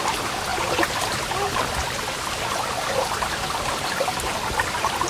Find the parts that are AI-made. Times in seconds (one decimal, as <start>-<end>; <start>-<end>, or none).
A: none